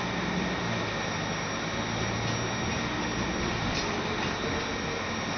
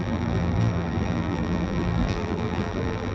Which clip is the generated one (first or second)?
second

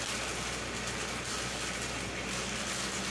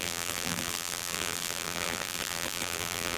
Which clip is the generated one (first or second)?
second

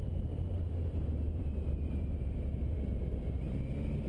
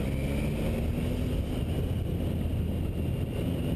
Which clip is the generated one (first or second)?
first